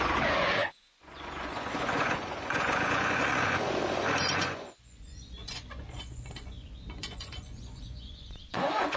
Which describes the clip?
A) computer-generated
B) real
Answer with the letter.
A